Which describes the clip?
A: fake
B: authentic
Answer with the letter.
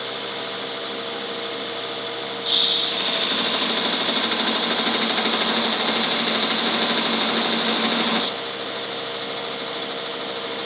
B